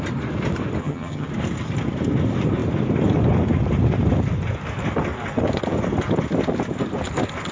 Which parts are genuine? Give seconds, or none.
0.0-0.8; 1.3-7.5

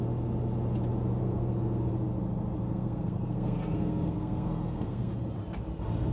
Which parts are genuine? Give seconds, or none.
0.0-1.2; 1.9-2.6; 5.1-6.1

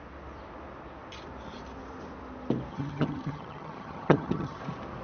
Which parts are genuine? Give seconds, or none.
0.0-2.7; 4.6-5.0

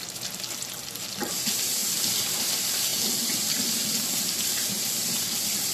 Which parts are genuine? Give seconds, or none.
0.0-5.7

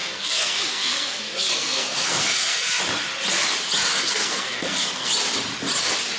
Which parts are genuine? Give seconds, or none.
2.8-3.9; 5.1-6.2

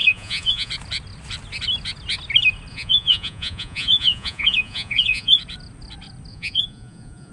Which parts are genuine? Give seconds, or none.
0.7-2.7; 5.4-6.3

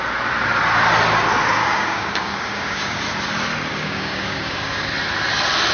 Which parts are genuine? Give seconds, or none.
0.0-1.6; 3.0-3.7; 4.9-5.7